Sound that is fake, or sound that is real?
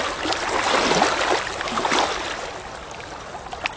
real